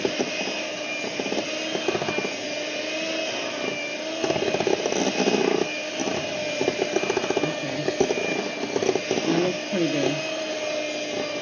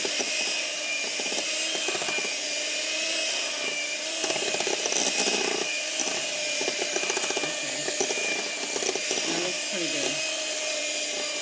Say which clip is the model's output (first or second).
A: second